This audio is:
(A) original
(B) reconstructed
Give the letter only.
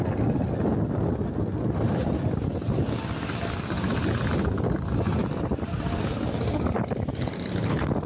A